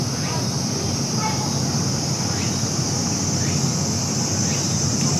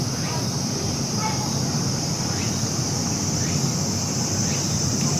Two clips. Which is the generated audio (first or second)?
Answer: second